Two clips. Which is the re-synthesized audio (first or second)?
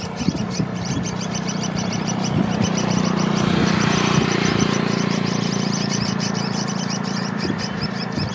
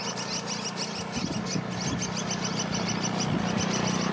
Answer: first